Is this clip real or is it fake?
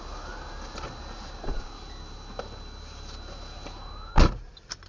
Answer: real